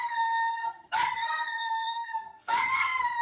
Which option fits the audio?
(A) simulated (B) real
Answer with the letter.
A